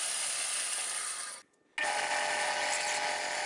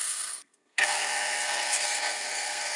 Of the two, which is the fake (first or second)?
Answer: second